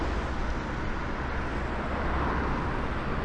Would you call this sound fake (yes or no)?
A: no